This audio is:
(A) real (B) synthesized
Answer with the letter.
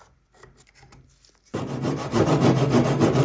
A